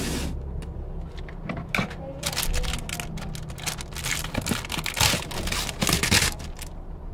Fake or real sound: real